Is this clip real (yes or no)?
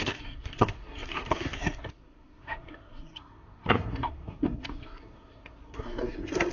no